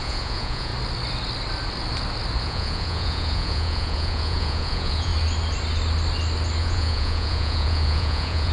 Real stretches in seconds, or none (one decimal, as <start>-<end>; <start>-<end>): 0.7-2.4; 5.1-6.6